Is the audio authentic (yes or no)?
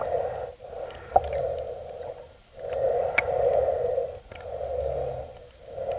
yes